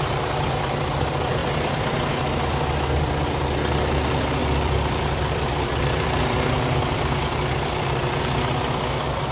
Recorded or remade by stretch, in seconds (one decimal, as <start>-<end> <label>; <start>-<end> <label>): 0.0-1.4 recorded; 1.4-2.1 remade; 2.1-4.4 recorded; 4.4-8.2 remade; 8.2-9.3 recorded